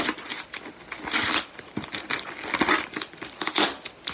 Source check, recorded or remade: recorded